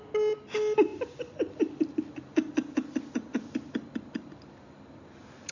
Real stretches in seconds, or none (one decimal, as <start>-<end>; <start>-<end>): 0.0-5.5